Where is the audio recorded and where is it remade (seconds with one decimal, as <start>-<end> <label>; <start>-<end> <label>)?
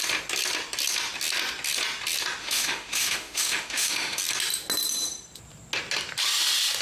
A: 0.0-2.4 recorded; 2.4-4.2 remade; 4.2-6.8 recorded